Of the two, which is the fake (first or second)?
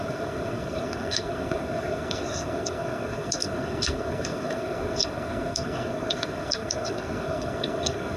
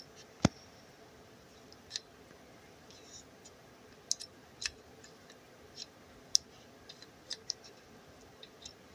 first